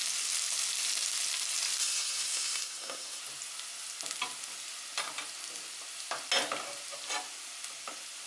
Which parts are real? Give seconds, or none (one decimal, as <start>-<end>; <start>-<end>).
0.0-1.8; 3.2-8.3